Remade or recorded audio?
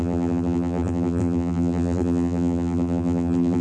remade